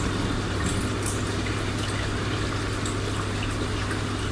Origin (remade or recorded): recorded